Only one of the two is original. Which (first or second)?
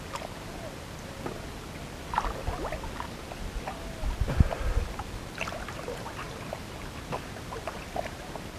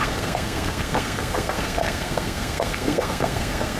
first